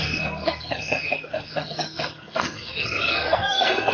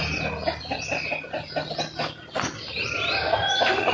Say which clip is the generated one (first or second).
first